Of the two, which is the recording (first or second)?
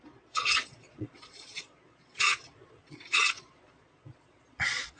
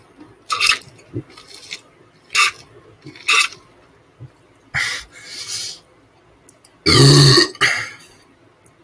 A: second